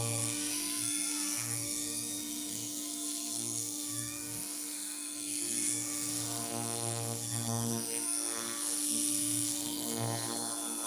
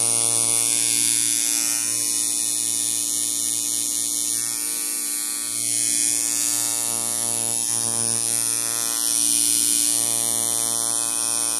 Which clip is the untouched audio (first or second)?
second